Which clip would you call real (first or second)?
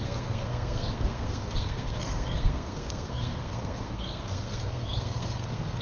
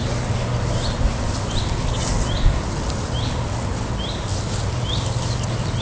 second